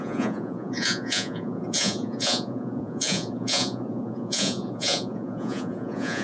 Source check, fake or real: fake